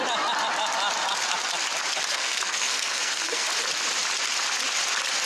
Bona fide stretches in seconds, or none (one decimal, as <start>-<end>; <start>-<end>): 0.0-2.1; 3.5-5.3